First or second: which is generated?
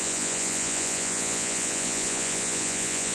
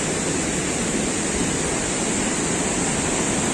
first